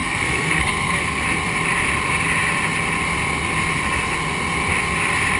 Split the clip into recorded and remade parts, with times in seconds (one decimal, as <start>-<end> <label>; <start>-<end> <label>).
0.0-1.2 remade; 1.2-5.4 recorded